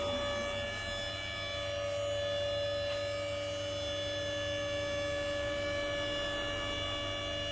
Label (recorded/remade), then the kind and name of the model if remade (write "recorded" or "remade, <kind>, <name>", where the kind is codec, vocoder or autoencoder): recorded